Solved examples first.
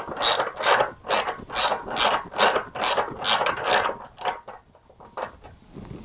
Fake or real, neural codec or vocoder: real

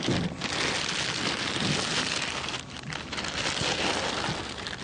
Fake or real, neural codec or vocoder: real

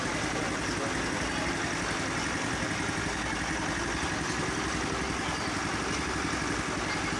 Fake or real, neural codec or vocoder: real